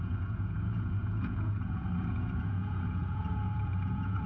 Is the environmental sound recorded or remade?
remade